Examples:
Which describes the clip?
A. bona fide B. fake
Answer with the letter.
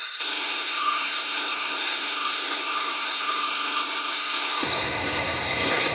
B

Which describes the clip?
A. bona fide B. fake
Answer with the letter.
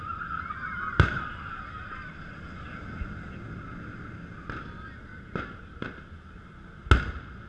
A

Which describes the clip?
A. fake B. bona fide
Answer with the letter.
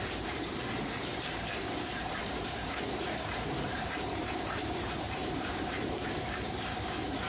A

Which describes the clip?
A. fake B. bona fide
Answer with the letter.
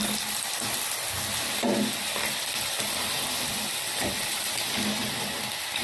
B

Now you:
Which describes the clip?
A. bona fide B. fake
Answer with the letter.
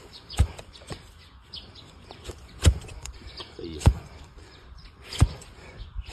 B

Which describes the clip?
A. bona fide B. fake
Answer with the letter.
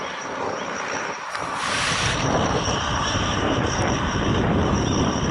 B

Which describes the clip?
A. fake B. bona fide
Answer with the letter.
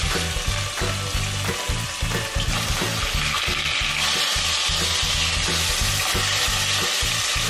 B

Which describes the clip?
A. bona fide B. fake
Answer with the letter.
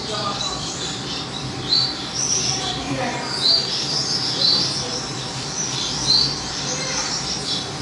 B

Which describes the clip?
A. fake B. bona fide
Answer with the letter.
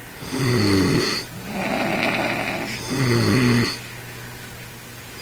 B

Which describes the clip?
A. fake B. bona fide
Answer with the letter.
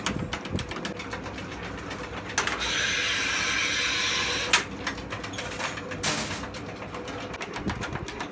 B